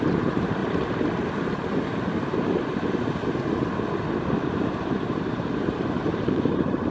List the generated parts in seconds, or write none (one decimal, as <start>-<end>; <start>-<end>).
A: 0.0-0.6; 4.7-6.9